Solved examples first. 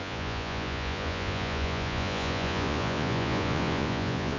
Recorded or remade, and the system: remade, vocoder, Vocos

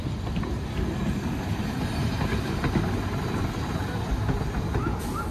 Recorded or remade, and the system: recorded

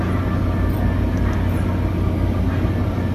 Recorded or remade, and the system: recorded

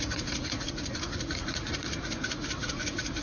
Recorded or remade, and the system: remade, vocoder, Vocos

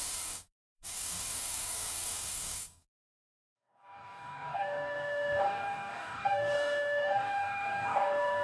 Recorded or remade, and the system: remade, codec, DAC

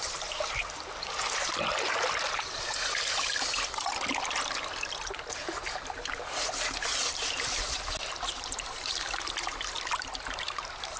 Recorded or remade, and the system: recorded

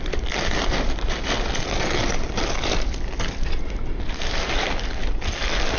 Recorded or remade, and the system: recorded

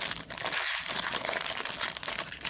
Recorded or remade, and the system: recorded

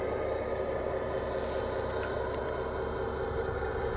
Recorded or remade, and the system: recorded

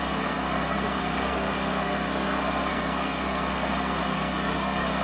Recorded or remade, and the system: remade, codec, SNAC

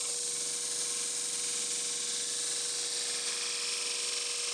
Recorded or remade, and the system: recorded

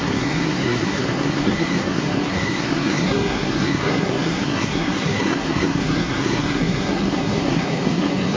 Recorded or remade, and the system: remade, codec, SNAC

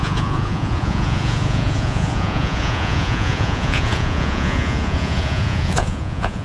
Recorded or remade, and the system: remade, vocoder, Vocos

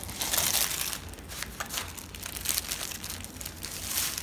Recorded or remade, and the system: recorded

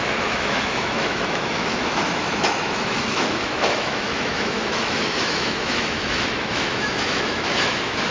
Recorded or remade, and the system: remade, autoencoder, DAC-VAE